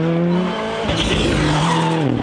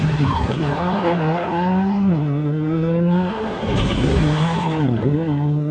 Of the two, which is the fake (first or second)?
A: second